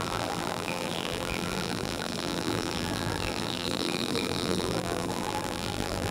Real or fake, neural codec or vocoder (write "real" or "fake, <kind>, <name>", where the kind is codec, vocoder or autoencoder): fake, vocoder, BigVGAN v2